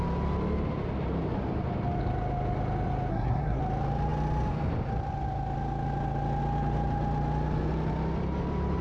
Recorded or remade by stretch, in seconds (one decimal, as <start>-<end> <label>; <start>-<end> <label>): 0.0-3.1 recorded; 3.1-3.6 remade; 3.6-8.8 recorded